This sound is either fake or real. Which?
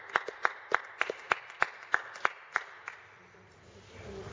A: real